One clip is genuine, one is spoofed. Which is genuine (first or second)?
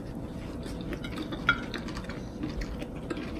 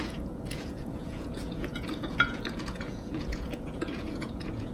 first